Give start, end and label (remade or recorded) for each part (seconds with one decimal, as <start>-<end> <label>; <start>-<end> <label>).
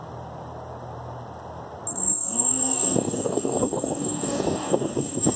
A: 0.0-1.9 recorded; 1.9-5.4 remade